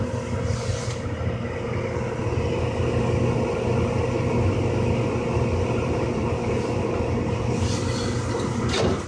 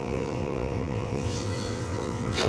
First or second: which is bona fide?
first